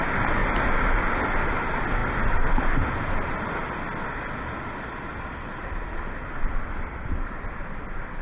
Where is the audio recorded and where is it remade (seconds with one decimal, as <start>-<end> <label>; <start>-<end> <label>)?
0.0-8.2 recorded